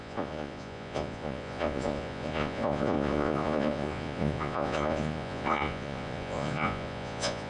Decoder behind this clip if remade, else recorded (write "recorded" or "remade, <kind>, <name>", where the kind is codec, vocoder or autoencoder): remade, vocoder, Vocos